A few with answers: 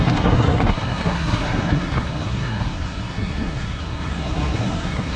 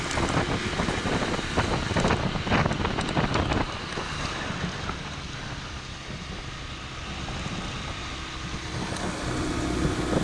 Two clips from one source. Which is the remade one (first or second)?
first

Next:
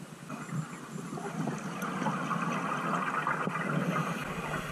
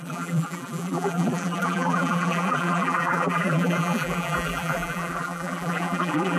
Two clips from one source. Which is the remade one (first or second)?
second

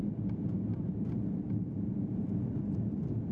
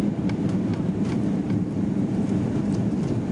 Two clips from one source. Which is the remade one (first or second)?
second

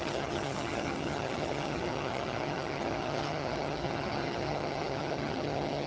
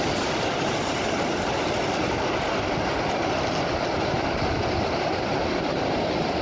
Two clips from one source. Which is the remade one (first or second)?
first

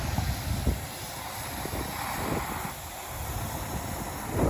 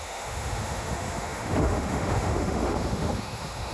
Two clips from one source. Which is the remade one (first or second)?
second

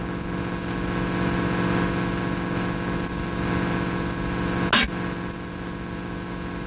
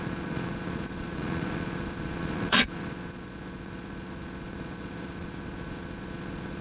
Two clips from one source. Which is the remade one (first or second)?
second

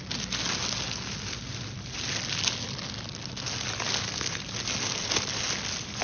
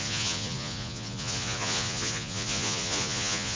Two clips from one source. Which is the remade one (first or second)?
second